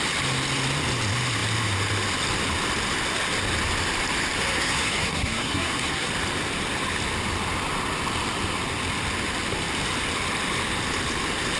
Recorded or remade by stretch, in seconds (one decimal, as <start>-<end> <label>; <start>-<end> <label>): 0.0-4.4 recorded; 4.4-6.1 remade; 6.1-11.6 recorded